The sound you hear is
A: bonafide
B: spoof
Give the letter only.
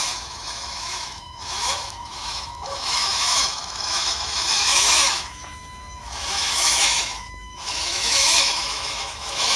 B